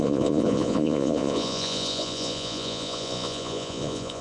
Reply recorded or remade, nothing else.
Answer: remade